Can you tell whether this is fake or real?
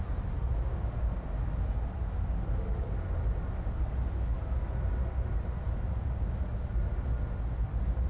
real